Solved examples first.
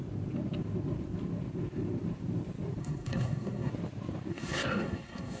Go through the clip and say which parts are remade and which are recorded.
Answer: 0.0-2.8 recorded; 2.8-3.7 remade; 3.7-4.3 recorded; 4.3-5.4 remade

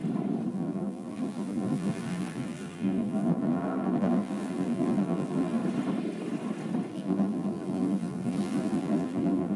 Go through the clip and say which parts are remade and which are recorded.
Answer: 0.0-0.5 recorded; 0.5-5.6 remade; 5.6-6.9 recorded; 6.9-9.6 remade